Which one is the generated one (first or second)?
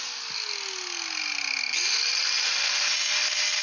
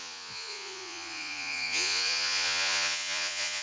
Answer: second